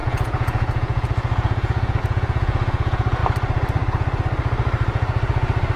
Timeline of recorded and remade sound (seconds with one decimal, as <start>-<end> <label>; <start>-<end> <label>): 0.0-3.2 remade; 3.2-5.8 recorded